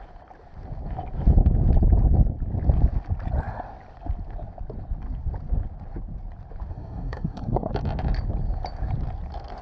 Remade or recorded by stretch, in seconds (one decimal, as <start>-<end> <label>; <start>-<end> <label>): 0.0-6.7 recorded; 6.7-7.7 remade; 7.7-9.6 recorded